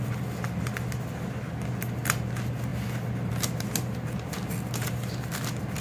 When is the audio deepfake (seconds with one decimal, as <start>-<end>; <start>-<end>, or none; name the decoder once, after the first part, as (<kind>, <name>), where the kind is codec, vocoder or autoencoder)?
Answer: none